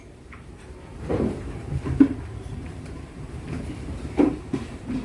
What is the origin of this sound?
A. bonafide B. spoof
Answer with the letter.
B